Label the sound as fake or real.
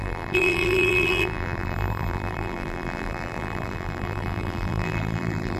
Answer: fake